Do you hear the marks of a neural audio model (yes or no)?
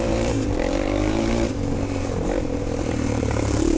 yes